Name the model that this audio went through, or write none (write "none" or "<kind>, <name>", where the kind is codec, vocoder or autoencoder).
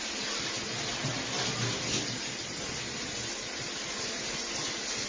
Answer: none